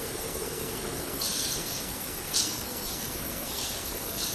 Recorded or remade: remade